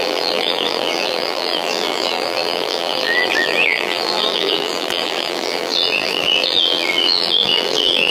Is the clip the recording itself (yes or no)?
no